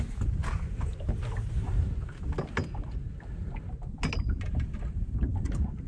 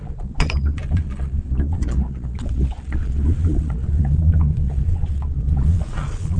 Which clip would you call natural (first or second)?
first